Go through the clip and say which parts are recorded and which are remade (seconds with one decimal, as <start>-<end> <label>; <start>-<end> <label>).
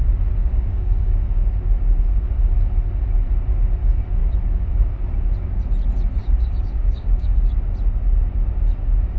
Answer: 0.0-0.4 recorded; 0.4-1.1 remade; 1.1-6.2 recorded; 6.2-7.5 remade; 7.5-9.2 recorded